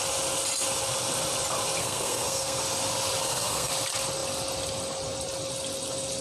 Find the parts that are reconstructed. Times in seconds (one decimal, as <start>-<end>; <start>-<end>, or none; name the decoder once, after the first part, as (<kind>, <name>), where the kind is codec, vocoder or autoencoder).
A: 1.8-2.6 (codec, SNAC); 3.2-3.7